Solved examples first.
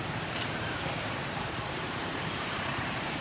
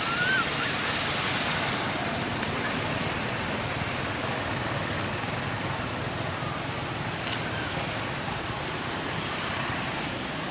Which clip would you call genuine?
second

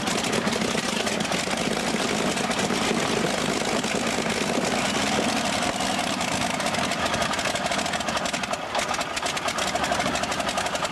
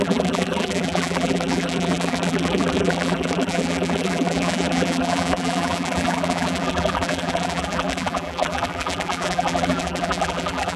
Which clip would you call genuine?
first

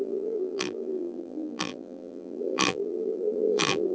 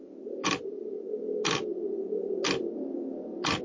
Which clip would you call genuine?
second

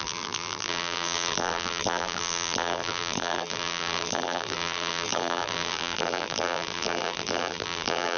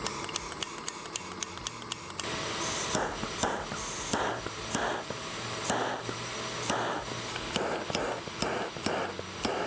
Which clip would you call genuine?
second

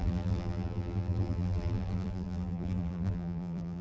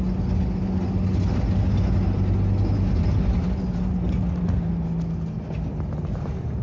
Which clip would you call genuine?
second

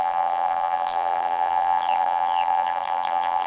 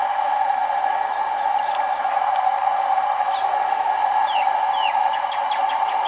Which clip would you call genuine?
second